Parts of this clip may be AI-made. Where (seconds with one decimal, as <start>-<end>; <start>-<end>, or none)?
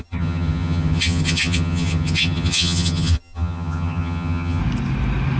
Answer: 0.0-4.6